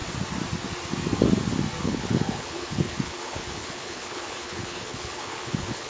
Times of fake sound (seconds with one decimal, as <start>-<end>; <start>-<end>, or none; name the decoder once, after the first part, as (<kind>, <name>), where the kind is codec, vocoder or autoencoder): 1.8-5.9 (codec, HILCodec)